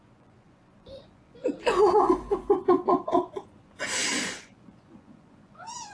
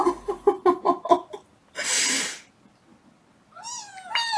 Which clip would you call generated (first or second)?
first